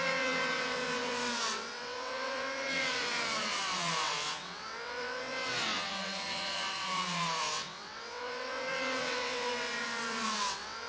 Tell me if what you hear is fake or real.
fake